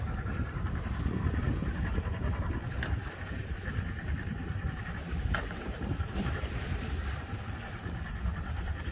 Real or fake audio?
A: fake